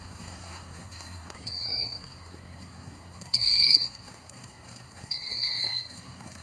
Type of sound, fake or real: fake